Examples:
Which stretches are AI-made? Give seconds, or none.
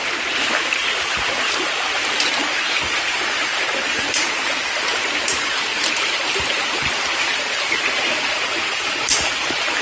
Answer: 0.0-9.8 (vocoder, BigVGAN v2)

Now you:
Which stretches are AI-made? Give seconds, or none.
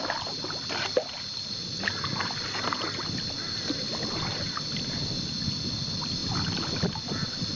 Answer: 6.2-7.0 (vocoder, BigVGAN v2)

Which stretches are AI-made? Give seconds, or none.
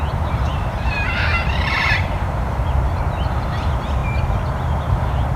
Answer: 0.5-2.9 (vocoder, BigVGAN v2)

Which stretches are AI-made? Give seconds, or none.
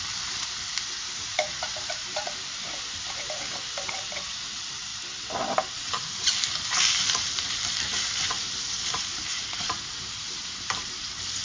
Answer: 0.0-4.9 (vocoder, BigVGAN v2); 5.7-11.4